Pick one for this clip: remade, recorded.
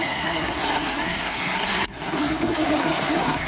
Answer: remade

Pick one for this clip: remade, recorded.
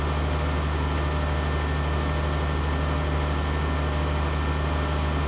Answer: recorded